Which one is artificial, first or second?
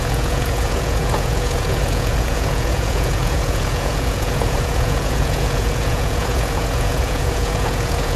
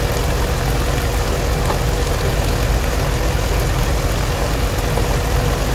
first